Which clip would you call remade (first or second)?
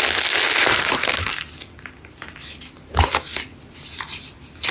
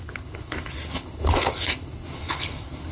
second